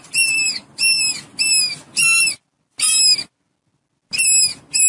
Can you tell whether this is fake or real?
real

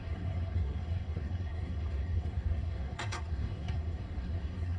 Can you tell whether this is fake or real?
fake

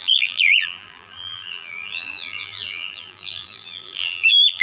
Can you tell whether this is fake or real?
fake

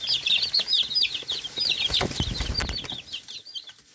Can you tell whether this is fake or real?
real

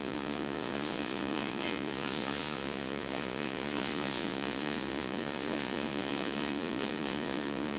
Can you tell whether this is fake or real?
fake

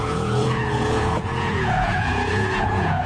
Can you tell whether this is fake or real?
fake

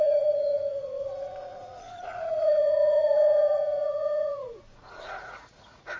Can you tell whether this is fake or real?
fake